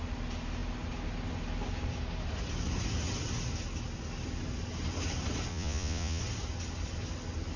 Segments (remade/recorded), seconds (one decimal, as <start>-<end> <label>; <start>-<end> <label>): 0.0-5.5 recorded; 5.5-6.2 remade; 6.2-7.6 recorded